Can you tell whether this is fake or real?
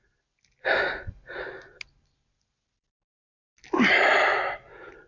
real